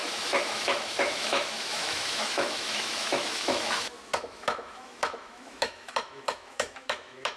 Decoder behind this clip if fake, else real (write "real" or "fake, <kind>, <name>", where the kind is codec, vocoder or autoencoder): fake, autoencoder, DAC-VAE